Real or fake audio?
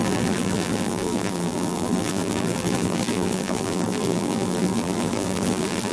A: fake